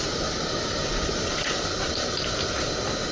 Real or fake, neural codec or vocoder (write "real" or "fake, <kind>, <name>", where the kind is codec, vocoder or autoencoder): real